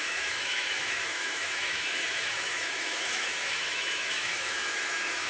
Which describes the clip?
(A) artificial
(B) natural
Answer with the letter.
A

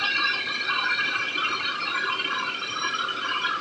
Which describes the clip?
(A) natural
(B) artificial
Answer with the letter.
A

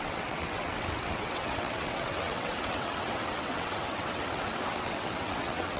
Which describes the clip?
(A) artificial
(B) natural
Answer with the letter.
A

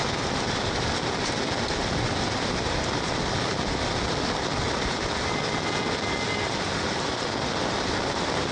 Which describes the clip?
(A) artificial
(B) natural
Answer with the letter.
B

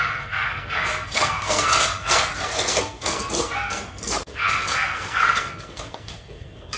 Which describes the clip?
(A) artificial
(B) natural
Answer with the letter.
A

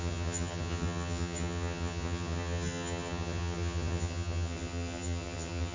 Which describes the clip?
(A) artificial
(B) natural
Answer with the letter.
A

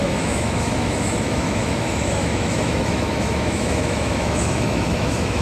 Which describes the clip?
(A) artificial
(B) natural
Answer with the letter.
A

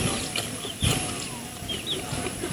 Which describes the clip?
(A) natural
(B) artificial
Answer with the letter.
A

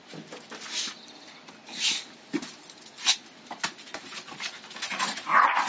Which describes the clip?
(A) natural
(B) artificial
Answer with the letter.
A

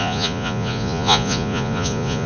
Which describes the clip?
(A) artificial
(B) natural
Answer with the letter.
A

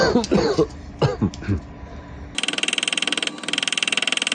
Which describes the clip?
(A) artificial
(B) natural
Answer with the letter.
B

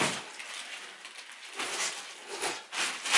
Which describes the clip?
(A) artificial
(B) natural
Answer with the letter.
B